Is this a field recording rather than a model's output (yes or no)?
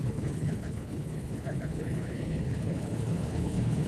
no